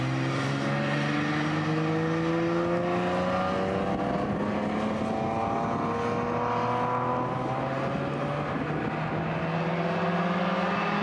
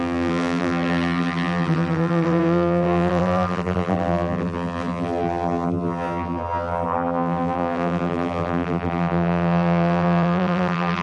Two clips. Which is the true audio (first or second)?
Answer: first